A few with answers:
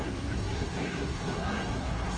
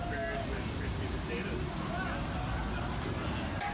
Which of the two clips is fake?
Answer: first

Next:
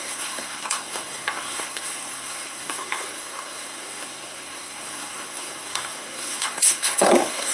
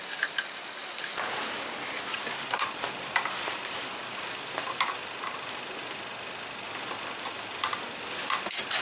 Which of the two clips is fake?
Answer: first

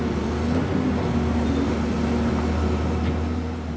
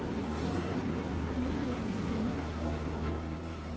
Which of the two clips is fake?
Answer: second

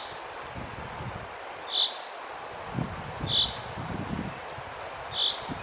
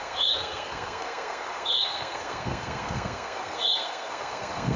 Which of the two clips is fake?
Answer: second